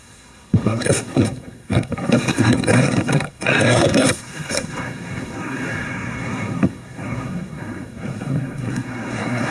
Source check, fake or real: fake